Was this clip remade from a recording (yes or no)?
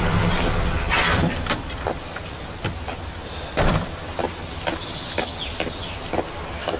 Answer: yes